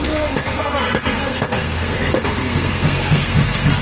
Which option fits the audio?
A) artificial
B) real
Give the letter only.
A